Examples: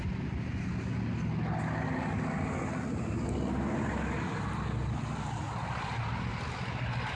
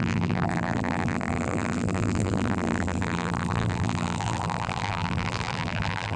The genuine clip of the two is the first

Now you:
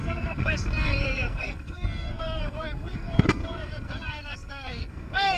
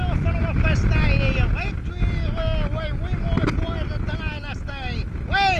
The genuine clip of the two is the second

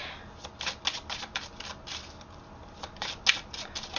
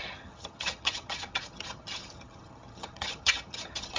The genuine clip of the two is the first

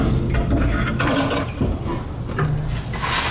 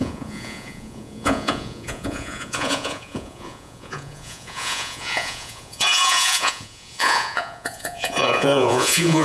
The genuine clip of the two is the first